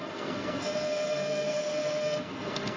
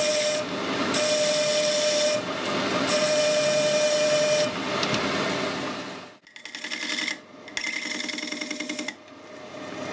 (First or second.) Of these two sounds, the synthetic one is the first